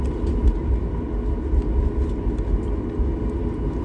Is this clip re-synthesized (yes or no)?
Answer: no